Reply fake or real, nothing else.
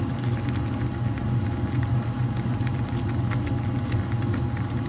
real